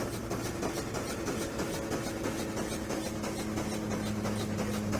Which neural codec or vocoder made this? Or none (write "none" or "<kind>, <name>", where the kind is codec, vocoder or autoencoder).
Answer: none